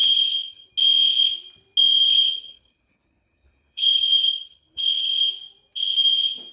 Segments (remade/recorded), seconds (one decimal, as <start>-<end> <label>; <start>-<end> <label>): 0.0-0.7 remade; 0.7-2.0 recorded; 2.0-5.3 remade; 5.3-6.5 recorded